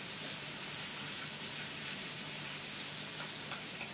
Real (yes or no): no